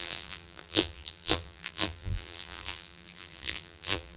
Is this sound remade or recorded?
remade